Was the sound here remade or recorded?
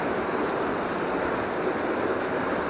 recorded